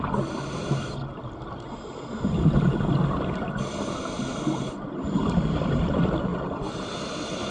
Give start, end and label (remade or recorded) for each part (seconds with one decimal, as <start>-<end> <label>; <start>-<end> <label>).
0.0-7.5 recorded